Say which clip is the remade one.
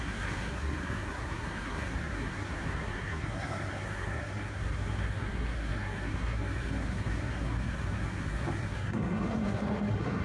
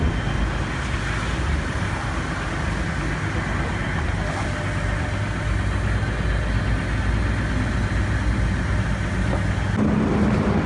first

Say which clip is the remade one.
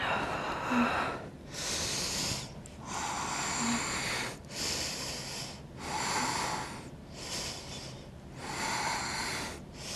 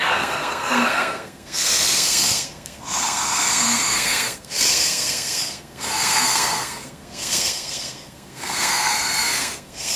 second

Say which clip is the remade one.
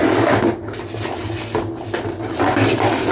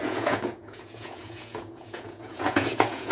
second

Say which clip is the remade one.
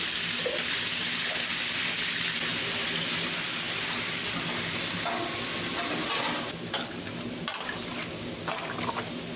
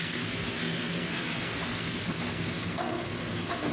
second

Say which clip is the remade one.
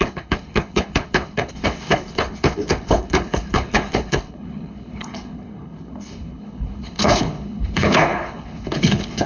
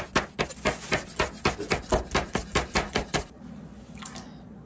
first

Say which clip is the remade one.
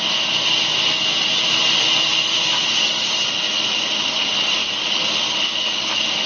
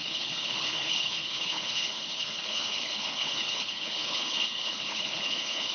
second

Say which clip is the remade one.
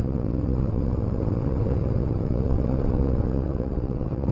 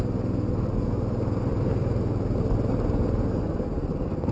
first